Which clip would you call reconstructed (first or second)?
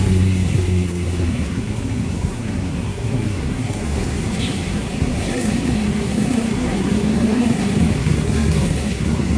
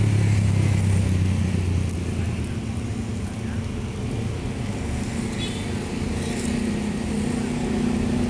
first